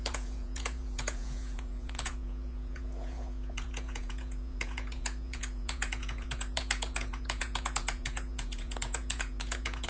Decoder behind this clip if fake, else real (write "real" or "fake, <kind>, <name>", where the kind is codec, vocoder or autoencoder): fake, vocoder, Vocos